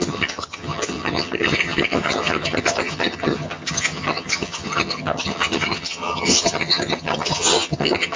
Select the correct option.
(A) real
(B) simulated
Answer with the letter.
B